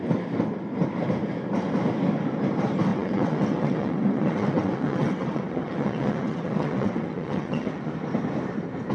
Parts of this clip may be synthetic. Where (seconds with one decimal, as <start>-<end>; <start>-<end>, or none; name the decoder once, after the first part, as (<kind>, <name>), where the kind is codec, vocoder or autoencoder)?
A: 2.9-7.9 (vocoder, WaveNeXt)